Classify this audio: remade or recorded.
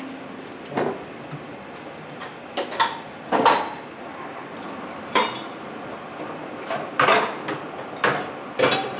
recorded